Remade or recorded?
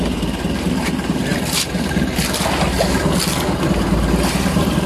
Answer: recorded